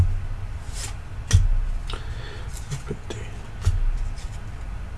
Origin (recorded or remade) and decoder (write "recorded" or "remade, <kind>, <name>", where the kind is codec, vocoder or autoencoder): recorded